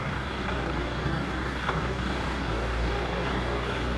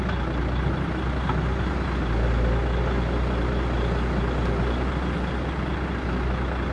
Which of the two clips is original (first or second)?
second